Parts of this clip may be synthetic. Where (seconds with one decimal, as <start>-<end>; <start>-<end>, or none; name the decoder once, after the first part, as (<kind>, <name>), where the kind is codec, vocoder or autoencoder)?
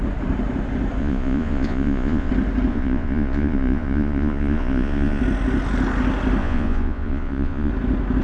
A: 1.0-2.3 (vocoder, Vocos); 2.7-5.2; 6.4-7.7